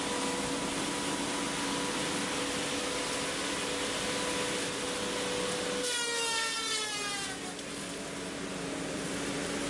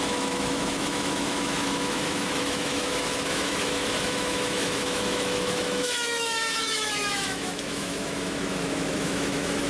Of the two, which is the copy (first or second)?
second